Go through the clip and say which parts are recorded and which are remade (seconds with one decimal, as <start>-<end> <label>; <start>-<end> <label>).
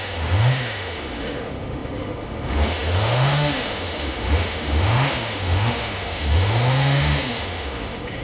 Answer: 0.0-8.2 remade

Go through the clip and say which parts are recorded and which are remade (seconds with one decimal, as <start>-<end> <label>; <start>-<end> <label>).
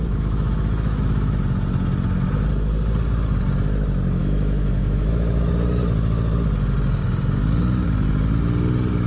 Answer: 0.0-1.4 remade; 1.4-4.2 recorded; 4.2-5.5 remade; 5.5-9.1 recorded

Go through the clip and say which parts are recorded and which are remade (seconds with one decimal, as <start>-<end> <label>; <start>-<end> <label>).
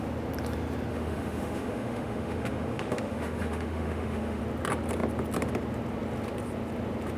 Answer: 0.0-0.9 recorded; 0.9-4.4 remade; 4.4-7.2 recorded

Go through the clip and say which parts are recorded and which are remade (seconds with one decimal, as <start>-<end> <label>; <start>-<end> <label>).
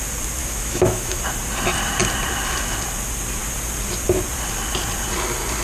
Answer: 0.0-0.4 recorded; 0.4-1.2 remade; 1.2-5.6 recorded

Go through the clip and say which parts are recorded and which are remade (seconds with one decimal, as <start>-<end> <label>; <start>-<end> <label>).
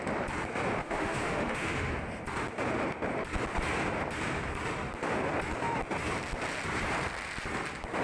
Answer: 0.0-0.8 recorded; 0.8-1.9 remade; 1.9-8.0 recorded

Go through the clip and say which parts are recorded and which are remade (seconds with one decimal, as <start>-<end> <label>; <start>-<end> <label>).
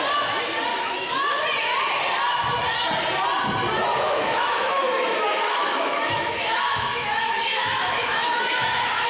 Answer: 0.0-0.7 recorded; 0.7-1.4 remade; 1.4-3.9 recorded; 3.9-9.1 remade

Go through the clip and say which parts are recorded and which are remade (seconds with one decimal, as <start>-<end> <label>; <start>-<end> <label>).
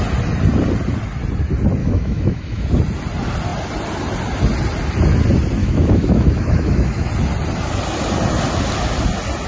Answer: 0.0-1.8 recorded; 1.8-2.7 remade; 2.7-5.6 recorded; 5.6-7.1 remade; 7.1-9.5 recorded